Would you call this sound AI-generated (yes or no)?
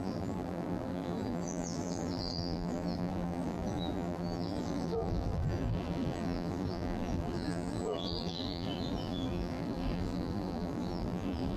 yes